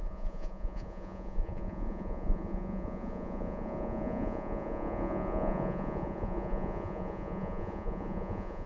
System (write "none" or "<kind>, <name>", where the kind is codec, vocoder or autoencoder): vocoder, Vocos